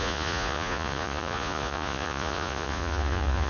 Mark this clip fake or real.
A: fake